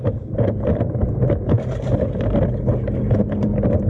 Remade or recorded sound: recorded